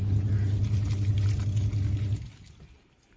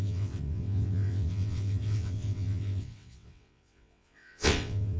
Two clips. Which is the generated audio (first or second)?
second